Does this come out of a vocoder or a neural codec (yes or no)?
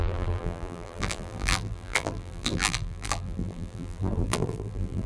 yes